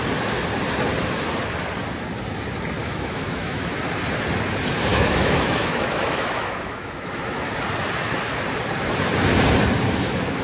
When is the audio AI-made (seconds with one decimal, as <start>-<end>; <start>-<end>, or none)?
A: 2.8-3.7; 4.9-7.5